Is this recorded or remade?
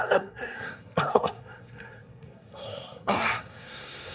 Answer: remade